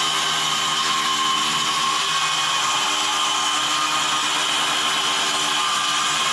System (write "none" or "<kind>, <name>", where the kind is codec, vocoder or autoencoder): none